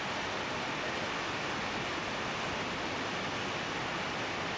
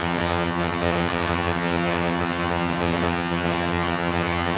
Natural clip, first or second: first